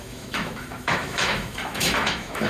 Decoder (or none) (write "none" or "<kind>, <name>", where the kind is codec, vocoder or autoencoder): autoencoder, DAC-VAE